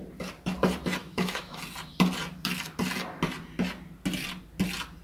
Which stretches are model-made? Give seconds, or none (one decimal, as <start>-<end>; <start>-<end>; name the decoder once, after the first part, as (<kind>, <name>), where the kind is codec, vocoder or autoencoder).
1.0-1.6 (autoencoder, DAC-VAE)